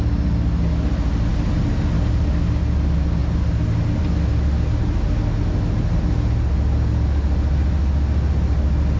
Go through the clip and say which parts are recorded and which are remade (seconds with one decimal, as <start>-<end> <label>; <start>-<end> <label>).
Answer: 0.0-9.0 recorded